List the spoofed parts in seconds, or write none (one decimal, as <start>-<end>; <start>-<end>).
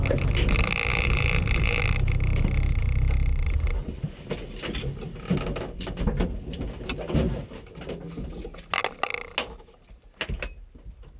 0.9-1.8